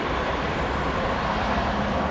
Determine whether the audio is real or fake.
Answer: fake